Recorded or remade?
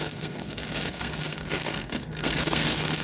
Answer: remade